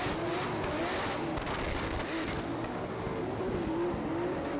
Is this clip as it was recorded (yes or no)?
yes